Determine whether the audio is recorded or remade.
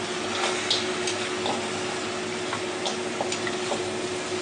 recorded